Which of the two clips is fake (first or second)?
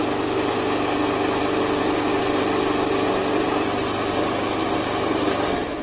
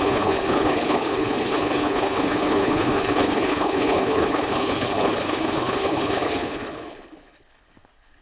second